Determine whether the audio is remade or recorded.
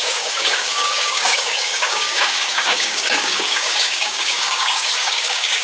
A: remade